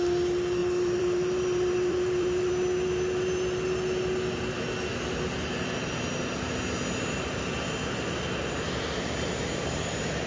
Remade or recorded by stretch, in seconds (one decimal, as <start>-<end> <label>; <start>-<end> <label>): 0.0-0.6 recorded; 0.6-2.5 remade; 2.5-10.3 recorded